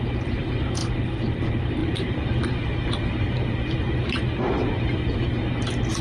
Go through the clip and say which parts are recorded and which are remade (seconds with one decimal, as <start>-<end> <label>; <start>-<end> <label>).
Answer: 0.0-1.8 recorded; 1.8-5.3 remade; 5.3-6.0 recorded